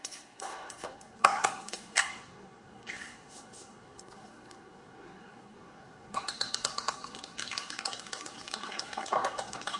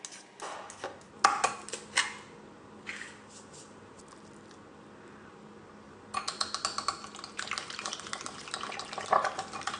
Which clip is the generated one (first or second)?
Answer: first